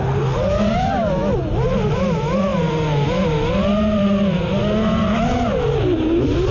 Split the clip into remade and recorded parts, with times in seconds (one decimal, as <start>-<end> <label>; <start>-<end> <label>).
0.0-6.5 recorded